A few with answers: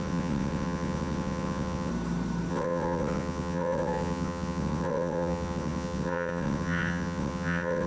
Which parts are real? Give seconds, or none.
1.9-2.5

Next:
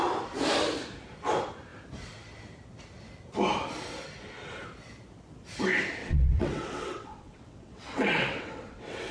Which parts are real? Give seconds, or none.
0.0-6.0

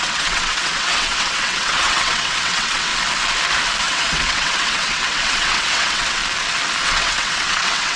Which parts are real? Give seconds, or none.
2.9-3.8; 6.2-6.8

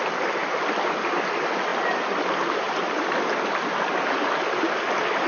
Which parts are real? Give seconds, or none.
0.0-5.3

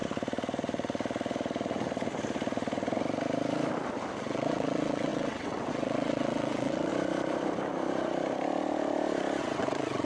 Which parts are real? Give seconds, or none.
0.0-4.2; 6.9-9.4

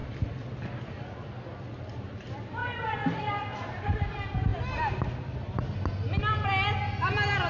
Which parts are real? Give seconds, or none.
0.0-7.5

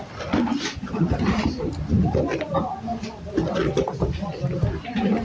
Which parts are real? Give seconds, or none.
0.0-5.2

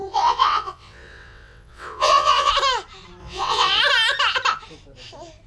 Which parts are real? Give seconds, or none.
2.5-3.2; 3.8-5.5